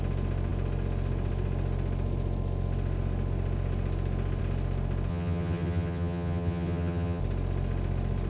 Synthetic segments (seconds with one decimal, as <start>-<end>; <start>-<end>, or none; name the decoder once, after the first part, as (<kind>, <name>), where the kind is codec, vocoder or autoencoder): 5.1-7.2 (vocoder, HiFi-GAN)